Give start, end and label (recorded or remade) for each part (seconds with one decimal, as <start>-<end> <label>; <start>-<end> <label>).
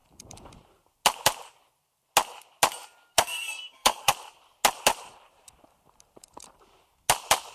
0.0-3.1 recorded; 3.1-4.1 remade; 4.1-7.5 recorded